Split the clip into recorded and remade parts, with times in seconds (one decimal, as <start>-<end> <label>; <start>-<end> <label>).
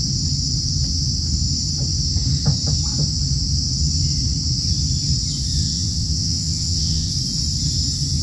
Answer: 0.0-5.6 recorded; 5.6-7.1 remade; 7.1-8.2 recorded